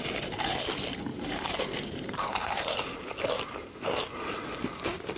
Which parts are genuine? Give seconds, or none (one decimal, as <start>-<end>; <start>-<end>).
0.0-1.1; 3.3-5.2